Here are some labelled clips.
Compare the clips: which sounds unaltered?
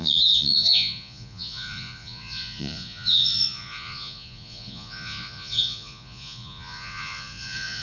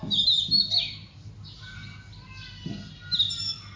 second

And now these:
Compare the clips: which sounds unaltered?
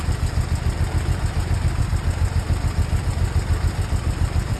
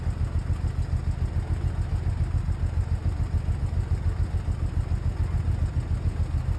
second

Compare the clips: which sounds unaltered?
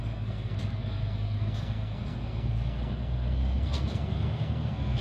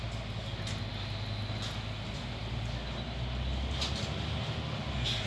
second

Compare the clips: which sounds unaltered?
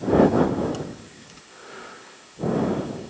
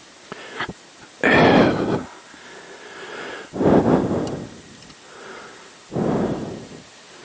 second